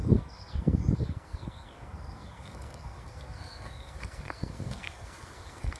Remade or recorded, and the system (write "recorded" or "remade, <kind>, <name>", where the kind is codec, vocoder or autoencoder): remade, codec, SNAC